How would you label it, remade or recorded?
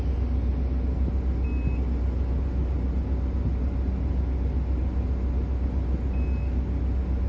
recorded